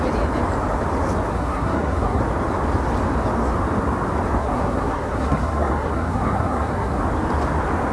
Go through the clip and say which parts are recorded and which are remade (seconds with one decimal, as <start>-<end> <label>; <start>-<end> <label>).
0.0-1.3 recorded; 1.3-2.2 remade; 2.2-4.4 recorded; 4.4-7.0 remade; 7.0-7.9 recorded